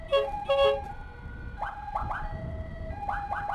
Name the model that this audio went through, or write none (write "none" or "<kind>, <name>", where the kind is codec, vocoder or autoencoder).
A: none